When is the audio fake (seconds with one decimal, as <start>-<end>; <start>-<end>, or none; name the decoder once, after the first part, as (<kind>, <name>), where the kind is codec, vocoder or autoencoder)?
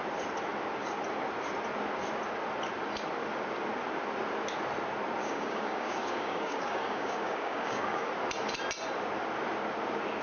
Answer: 5.2-8.1 (codec, DAC)